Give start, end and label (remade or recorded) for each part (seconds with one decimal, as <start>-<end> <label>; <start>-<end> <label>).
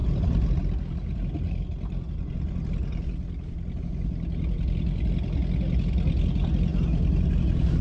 0.0-7.8 recorded